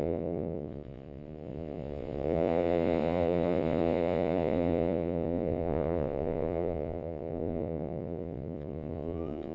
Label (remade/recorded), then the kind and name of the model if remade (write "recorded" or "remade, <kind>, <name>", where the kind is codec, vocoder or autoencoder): remade, vocoder, Vocos